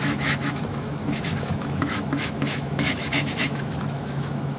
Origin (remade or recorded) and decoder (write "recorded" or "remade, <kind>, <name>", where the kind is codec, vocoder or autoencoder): remade, autoencoder, DAC-VAE